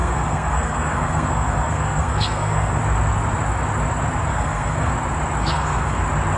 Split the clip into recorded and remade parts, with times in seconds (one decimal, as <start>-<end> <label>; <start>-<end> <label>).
0.0-2.8 remade; 2.8-4.3 recorded; 4.3-4.9 remade; 4.9-5.4 recorded; 5.4-6.0 remade; 6.0-6.4 recorded